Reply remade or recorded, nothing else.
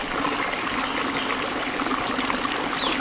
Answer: recorded